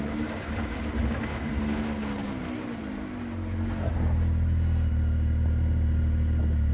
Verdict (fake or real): real